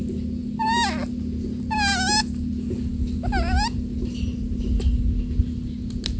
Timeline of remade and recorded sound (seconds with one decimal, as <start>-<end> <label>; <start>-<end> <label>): 0.0-6.2 recorded